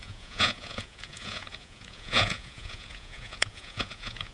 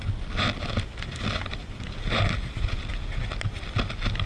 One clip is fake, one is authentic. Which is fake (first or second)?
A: first